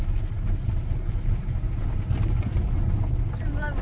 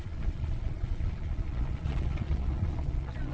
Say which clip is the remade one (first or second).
second